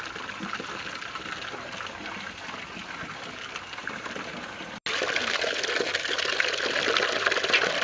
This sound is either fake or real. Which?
real